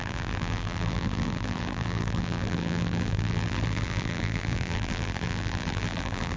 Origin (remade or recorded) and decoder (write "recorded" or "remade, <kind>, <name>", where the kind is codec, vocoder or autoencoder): remade, vocoder, BigVGAN v2